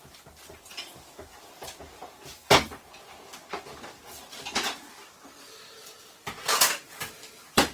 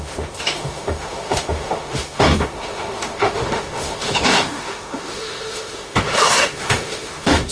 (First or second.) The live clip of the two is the first